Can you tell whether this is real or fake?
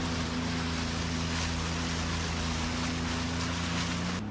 real